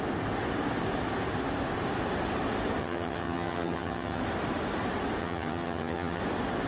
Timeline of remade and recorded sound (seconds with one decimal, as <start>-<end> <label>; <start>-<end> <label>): 0.0-2.8 recorded; 2.8-4.2 remade; 4.2-5.2 recorded; 5.2-6.2 remade; 6.2-6.7 recorded